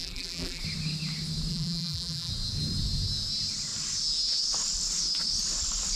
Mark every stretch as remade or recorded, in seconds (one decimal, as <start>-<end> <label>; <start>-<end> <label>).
0.0-0.6 remade; 0.6-1.5 recorded; 1.5-2.3 remade; 2.3-6.0 recorded